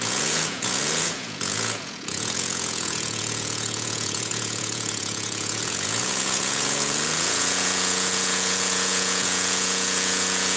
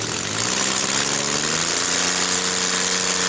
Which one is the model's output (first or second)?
first